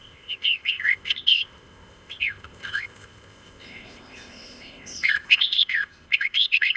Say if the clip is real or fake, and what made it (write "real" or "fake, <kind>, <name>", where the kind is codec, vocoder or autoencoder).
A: fake, codec, ZipCodec